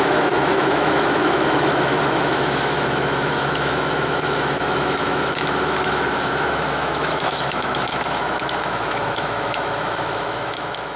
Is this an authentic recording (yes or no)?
no